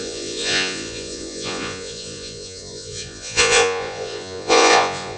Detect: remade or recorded remade